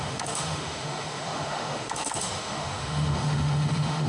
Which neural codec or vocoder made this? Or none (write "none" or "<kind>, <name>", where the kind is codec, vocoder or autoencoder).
autoencoder, DAC-VAE